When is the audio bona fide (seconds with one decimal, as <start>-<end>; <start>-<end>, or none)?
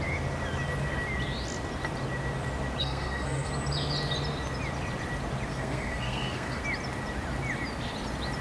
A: 0.0-2.8; 3.5-5.5; 6.6-8.4